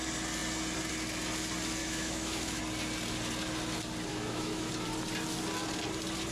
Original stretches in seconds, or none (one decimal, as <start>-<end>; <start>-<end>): 0.0-1.8; 2.6-4.1; 4.7-6.3